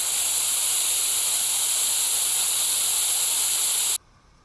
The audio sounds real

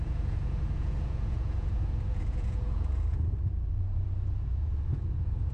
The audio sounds fake